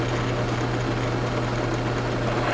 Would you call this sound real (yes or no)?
yes